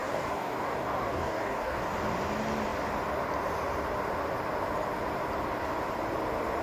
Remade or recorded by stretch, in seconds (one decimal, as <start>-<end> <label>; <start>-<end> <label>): 0.0-1.8 remade; 1.8-6.6 recorded